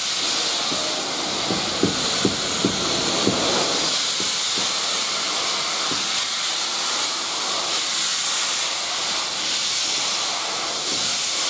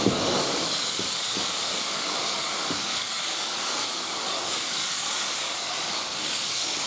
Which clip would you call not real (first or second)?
second